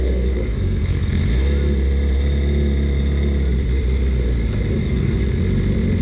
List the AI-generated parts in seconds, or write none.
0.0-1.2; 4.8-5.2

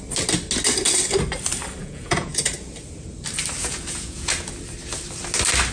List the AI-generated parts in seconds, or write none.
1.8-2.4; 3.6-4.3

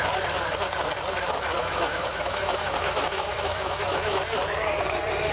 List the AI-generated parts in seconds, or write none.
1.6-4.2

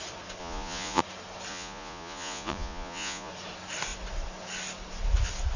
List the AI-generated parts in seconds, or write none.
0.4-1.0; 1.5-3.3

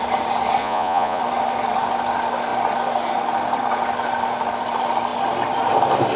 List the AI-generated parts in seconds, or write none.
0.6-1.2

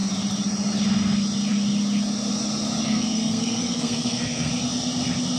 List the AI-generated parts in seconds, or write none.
2.8-4.5